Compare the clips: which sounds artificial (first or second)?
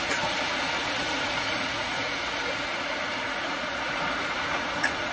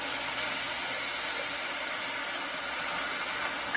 first